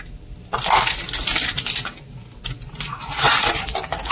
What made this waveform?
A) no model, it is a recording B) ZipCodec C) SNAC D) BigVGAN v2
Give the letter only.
A